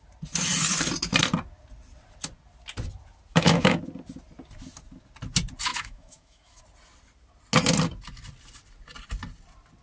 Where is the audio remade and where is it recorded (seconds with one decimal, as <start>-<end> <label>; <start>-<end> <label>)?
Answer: 0.0-3.3 recorded; 3.3-3.8 remade; 3.8-5.7 recorded; 5.7-6.6 remade; 6.6-9.8 recorded